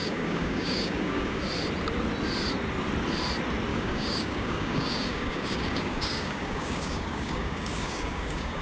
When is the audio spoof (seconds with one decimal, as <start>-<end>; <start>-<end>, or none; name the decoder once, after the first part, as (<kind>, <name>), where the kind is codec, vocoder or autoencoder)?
0.0-1.4 (codec, DAC); 3.7-8.6